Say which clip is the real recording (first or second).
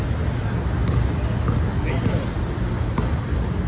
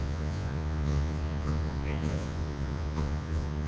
first